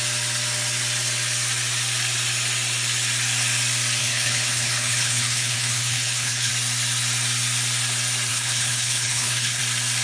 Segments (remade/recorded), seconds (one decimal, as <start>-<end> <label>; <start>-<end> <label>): 0.0-4.0 recorded; 4.0-6.5 remade; 6.5-8.3 recorded; 8.3-9.6 remade; 9.6-10.0 recorded